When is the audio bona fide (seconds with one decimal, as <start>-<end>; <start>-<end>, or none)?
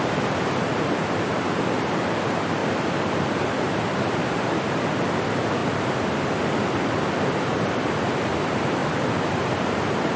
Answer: 2.6-3.1; 5.6-7.8; 8.8-9.4